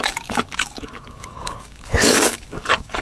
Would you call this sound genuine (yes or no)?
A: no